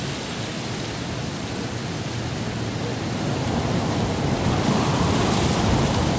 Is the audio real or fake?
real